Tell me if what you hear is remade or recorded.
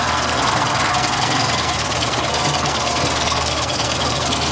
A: remade